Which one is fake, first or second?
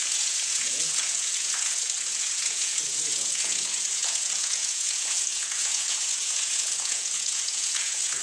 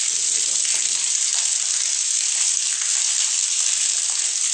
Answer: first